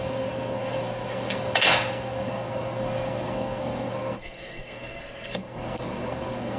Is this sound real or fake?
fake